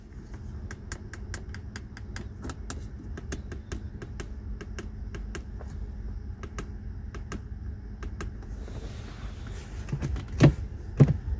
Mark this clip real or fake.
real